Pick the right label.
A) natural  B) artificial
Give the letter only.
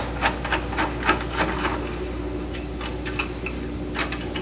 A